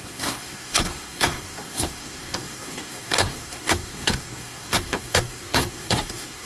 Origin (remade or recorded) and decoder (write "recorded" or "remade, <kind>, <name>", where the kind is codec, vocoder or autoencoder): remade, codec, SNAC